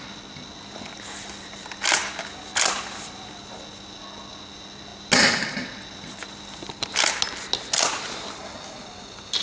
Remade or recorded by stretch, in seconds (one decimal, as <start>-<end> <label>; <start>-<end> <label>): 0.0-9.4 recorded